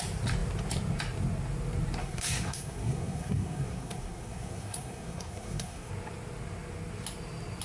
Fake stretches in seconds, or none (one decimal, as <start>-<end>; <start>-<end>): 2.0-5.9